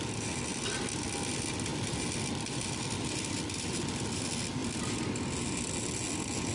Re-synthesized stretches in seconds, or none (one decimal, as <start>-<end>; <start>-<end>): none